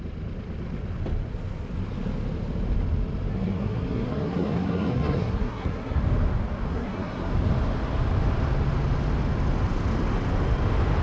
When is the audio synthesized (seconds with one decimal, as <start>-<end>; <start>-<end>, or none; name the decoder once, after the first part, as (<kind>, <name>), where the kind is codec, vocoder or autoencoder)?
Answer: 3.3-6.0 (codec, SNAC); 6.7-7.3